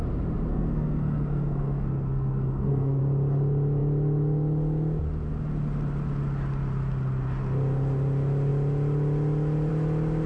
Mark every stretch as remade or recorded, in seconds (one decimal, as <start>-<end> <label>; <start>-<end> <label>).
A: 0.0-0.5 recorded; 0.5-3.0 remade; 3.0-10.3 recorded